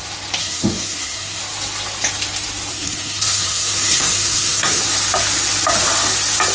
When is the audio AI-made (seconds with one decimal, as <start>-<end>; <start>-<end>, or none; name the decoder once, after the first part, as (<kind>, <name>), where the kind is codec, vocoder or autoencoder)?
0.4-1.4 (codec, SNAC); 2.7-4.8